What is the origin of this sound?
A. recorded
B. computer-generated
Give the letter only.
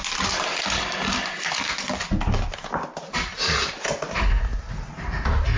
A